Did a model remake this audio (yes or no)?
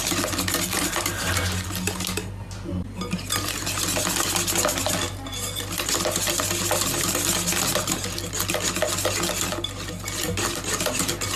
no